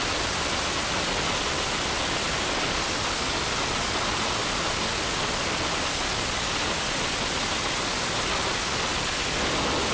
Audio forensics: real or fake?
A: real